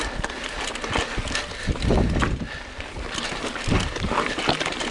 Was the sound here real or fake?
real